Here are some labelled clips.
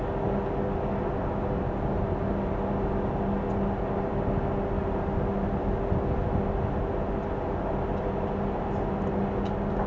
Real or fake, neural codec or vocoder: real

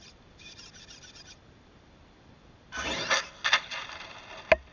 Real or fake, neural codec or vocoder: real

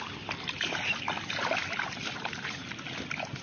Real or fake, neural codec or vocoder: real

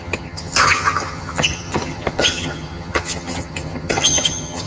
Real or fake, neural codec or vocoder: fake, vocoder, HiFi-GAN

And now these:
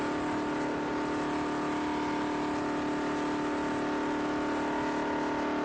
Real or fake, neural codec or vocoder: real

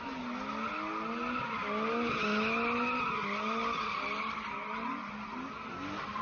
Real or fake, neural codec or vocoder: real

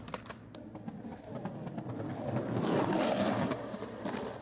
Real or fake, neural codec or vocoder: real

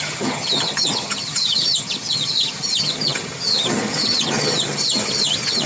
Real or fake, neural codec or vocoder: fake, vocoder, HiFi-GAN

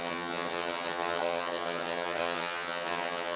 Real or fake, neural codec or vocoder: fake, vocoder, HiFi-GAN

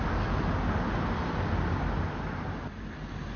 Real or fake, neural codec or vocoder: real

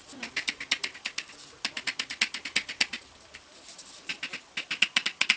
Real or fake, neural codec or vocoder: real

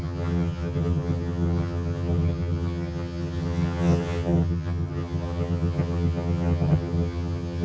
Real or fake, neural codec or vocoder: fake, vocoder, HiFi-GAN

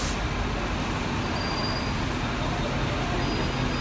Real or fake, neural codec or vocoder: real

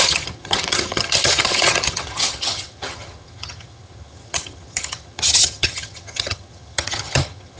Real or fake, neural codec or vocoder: fake, vocoder, HiFi-GAN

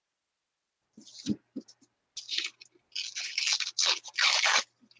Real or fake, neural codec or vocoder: real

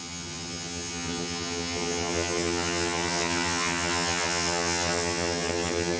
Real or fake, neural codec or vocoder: fake, vocoder, HiFi-GAN